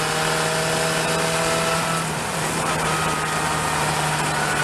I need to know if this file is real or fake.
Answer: real